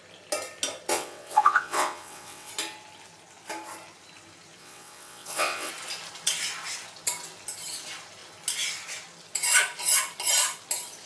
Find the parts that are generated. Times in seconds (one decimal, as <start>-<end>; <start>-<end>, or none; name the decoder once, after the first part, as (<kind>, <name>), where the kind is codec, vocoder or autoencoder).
0.9-2.5 (vocoder, WaveNeXt); 4.6-5.7